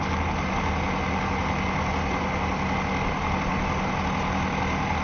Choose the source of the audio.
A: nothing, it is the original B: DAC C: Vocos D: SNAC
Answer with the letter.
A